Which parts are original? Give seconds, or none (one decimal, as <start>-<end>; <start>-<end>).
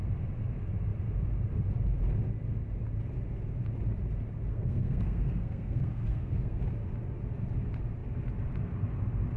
0.0-4.5; 6.6-9.4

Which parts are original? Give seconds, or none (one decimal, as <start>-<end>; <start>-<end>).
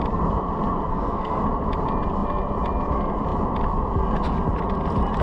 0.0-0.9; 1.4-5.2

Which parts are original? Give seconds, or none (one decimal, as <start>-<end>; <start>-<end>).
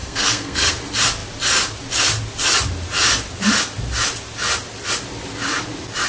0.7-6.1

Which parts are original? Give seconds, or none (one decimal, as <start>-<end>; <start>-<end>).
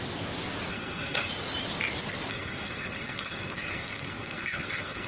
0.0-0.7; 1.3-2.3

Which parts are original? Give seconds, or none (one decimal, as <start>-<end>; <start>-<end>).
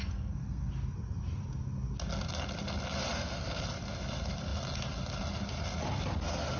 0.7-3.1; 3.6-6.6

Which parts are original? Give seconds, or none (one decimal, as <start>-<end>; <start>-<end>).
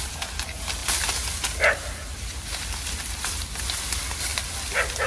0.0-5.1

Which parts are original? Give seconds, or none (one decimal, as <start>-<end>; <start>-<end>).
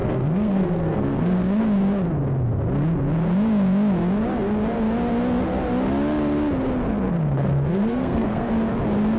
1.6-6.9; 8.5-9.2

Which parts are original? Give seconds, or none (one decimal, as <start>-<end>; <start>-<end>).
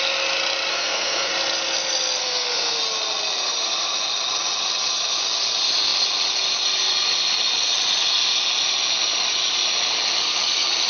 0.0-0.7; 1.3-2.2; 2.8-10.9